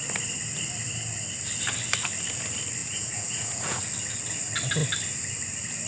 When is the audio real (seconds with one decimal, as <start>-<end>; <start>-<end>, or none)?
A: 0.0-2.8; 3.8-5.9